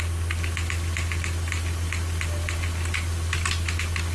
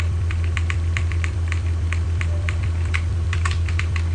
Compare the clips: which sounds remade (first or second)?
second